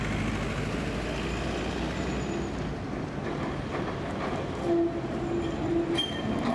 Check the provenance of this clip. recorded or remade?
recorded